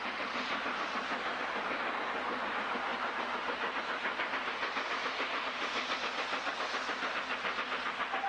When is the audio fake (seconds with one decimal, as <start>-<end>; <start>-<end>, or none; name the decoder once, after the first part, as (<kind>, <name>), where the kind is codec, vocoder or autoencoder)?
2.9-3.8 (vocoder, BigVGAN v2)